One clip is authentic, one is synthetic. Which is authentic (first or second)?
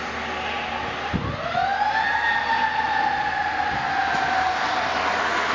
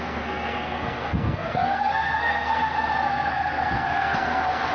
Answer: first